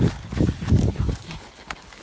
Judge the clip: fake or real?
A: fake